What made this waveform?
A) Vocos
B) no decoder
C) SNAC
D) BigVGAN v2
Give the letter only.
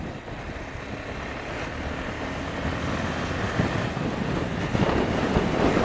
B